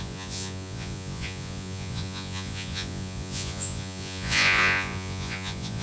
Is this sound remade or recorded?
remade